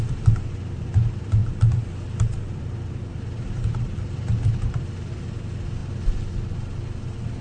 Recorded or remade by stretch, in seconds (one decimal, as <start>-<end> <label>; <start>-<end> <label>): 0.0-5.8 remade; 5.8-7.4 recorded